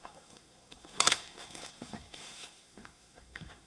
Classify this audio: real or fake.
fake